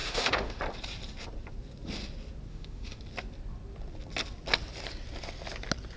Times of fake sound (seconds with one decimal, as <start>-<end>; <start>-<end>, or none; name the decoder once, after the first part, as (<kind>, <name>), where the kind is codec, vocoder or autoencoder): 0.0-0.6 (autoencoder, DAC-VAE); 2.5-3.0